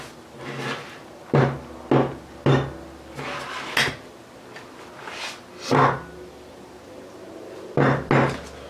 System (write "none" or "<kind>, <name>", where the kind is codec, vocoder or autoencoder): none